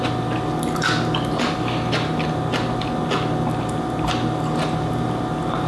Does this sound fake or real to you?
real